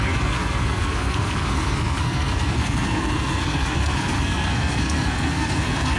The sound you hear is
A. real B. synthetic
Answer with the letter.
B